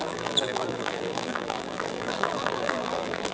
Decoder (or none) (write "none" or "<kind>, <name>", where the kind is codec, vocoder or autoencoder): vocoder, BigVGAN v2